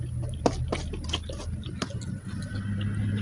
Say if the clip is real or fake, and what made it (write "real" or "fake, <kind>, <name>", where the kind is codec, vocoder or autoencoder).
real